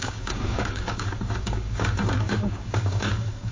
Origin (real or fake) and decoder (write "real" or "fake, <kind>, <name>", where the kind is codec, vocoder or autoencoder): fake, codec, DAC